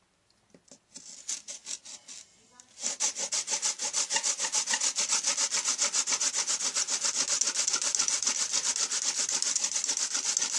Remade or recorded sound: recorded